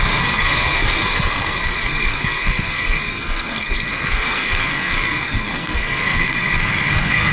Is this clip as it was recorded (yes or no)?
no